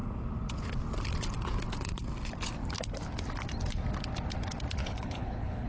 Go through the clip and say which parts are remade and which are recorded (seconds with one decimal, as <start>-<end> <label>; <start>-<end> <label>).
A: 0.0-4.8 recorded; 4.8-5.7 remade

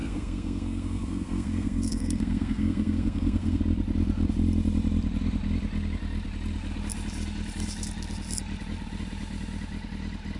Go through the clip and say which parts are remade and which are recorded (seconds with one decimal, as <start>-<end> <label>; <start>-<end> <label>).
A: 0.0-3.6 remade; 3.6-10.4 recorded

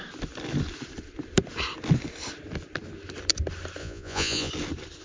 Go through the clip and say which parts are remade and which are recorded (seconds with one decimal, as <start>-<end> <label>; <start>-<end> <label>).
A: 0.0-3.8 recorded; 3.8-4.5 remade; 4.5-5.0 recorded

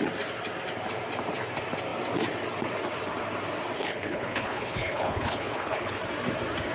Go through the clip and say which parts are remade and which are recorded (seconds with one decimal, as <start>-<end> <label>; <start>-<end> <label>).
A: 0.0-3.8 recorded; 3.8-6.0 remade; 6.0-6.7 recorded

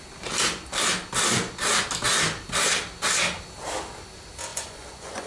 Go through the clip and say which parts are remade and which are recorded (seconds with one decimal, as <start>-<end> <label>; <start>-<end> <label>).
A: 0.0-4.5 recorded; 4.5-5.3 remade

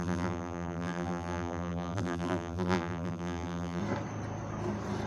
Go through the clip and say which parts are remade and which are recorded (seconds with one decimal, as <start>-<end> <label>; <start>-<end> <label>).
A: 0.0-3.8 remade; 3.8-5.1 recorded

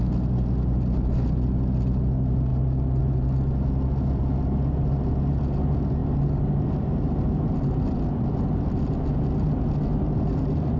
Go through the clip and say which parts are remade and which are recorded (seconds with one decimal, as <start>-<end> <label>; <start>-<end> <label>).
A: 0.0-10.8 recorded

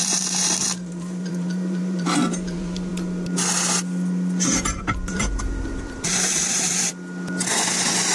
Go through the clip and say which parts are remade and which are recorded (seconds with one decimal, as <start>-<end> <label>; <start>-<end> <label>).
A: 0.0-2.9 remade; 2.9-5.1 recorded; 5.1-6.9 remade; 6.9-8.1 recorded